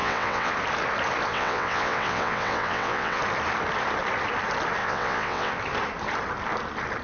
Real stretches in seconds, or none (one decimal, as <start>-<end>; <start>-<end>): 0.5-1.3; 3.2-4.8; 5.5-7.0